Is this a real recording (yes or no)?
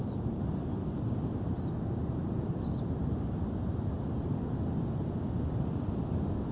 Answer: yes